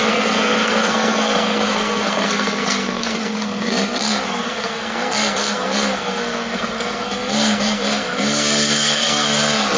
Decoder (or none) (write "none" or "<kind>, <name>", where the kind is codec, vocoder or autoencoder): codec, SNAC